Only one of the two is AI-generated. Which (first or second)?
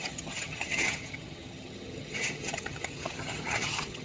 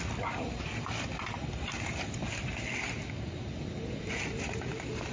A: first